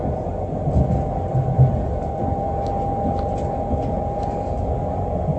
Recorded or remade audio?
recorded